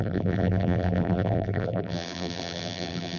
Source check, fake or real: fake